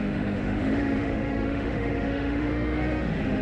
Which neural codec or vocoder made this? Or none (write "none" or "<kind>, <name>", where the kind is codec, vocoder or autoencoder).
autoencoder, DAC-VAE